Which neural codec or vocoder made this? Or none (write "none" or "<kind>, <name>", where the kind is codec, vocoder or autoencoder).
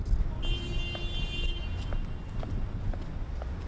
none